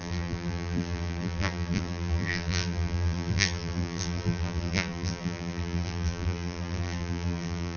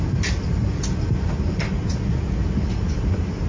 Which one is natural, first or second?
second